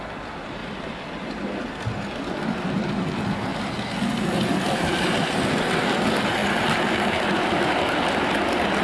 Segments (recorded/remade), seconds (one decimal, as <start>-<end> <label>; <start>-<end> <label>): 0.0-6.4 recorded; 6.4-8.4 remade; 8.4-8.8 recorded